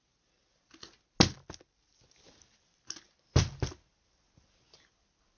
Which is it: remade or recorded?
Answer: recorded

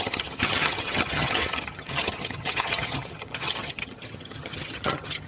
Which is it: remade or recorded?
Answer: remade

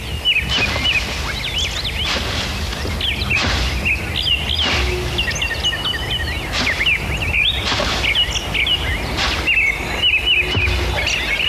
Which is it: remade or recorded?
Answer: recorded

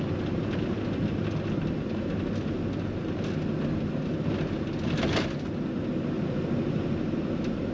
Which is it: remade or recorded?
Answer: recorded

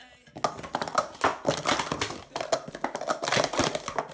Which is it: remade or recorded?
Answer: recorded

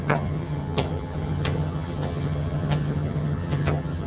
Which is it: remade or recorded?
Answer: remade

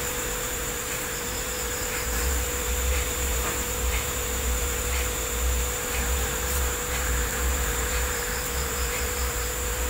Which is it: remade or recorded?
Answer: remade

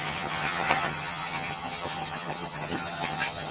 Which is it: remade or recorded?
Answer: remade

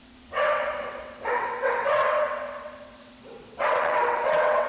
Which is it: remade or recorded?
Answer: remade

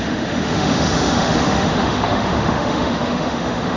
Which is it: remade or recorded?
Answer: remade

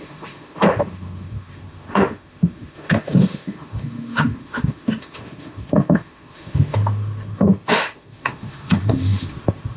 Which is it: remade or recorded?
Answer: remade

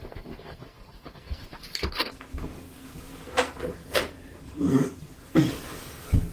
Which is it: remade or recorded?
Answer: remade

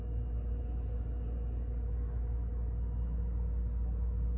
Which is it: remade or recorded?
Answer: recorded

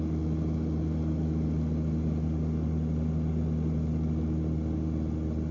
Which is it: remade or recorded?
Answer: recorded